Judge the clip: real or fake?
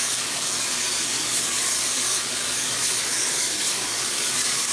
fake